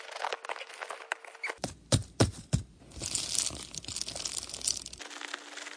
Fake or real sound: real